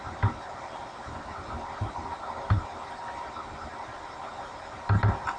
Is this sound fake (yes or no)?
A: no